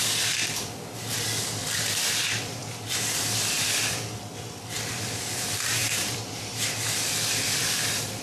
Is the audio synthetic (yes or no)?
yes